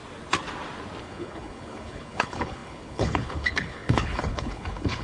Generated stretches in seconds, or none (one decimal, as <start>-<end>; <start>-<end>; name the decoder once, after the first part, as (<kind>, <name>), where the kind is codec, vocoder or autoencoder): 1.0-5.0 (codec, HILCodec)